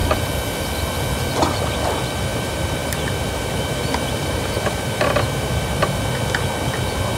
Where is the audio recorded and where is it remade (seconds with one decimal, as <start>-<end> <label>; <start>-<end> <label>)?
0.0-2.3 recorded; 2.3-6.0 remade; 6.0-7.2 recorded